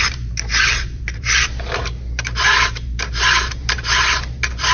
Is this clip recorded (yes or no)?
no